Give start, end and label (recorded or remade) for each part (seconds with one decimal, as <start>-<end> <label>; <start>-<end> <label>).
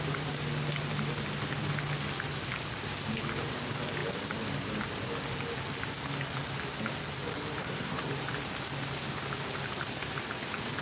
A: 0.0-7.6 recorded; 7.6-8.1 remade; 8.1-10.8 recorded